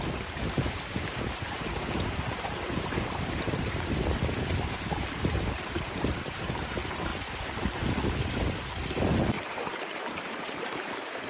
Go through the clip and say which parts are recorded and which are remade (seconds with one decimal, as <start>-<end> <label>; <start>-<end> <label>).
0.0-7.1 remade; 7.1-9.3 recorded; 9.3-11.3 remade